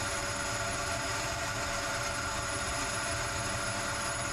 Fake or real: fake